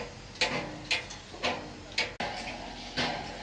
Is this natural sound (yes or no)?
yes